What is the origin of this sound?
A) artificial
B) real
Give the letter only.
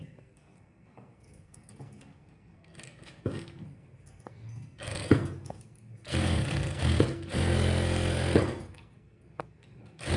A